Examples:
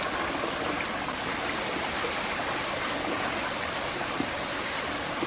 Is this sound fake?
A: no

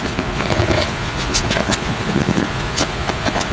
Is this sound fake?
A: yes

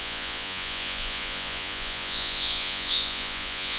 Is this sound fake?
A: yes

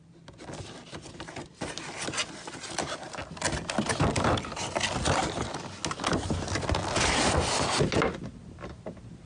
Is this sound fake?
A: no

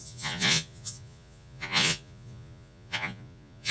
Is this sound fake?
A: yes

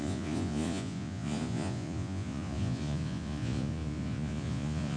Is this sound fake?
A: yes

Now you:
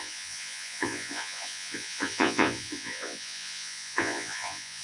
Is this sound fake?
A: yes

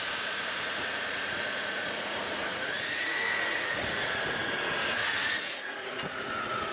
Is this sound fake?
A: yes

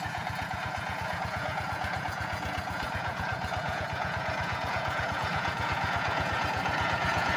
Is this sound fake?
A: yes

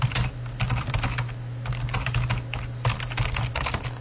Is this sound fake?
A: no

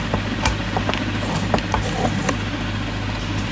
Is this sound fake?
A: no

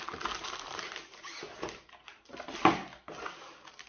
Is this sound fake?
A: no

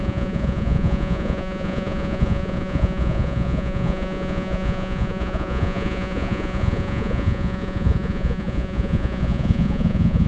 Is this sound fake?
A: yes